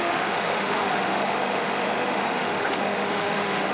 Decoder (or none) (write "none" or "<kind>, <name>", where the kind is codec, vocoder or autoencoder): autoencoder, DAC-VAE